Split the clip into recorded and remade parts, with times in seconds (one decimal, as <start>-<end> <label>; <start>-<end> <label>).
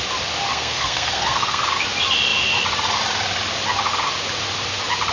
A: 0.0-0.5 recorded; 0.5-1.6 remade; 1.6-5.1 recorded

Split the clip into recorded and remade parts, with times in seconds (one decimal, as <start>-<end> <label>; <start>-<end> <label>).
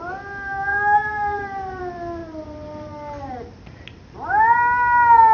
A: 0.0-0.7 recorded; 0.7-1.8 remade; 1.8-2.2 recorded; 2.2-3.5 remade; 3.5-5.3 recorded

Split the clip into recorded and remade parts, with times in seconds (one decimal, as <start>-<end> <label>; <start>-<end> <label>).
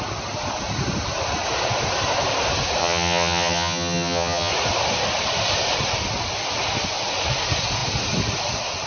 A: 0.0-2.8 recorded; 2.8-4.5 remade; 4.5-8.9 recorded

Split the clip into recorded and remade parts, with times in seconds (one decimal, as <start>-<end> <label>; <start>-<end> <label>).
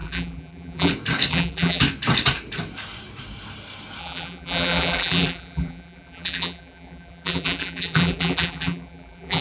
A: 0.0-0.9 remade; 0.9-1.3 recorded; 1.3-1.8 remade; 1.8-4.0 recorded; 4.0-9.4 remade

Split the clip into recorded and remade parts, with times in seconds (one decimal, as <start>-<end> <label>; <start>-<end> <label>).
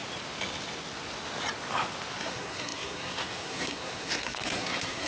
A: 0.0-2.2 recorded; 2.2-5.1 remade